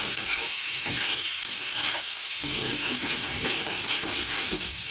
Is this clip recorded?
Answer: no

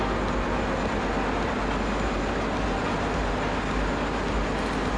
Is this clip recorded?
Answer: yes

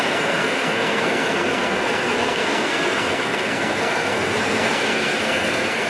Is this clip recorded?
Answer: no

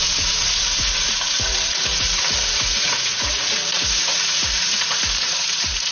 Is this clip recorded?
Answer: no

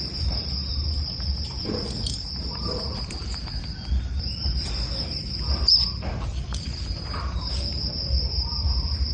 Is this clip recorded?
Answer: no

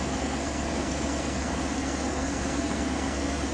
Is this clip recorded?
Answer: no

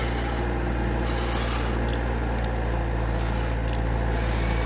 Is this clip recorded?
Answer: yes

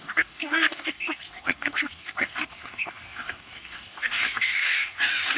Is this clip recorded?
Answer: no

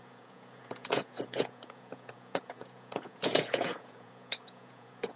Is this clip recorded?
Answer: no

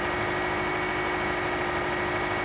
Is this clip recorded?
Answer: yes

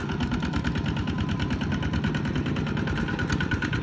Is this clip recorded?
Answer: yes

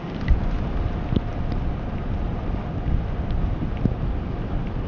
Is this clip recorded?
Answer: yes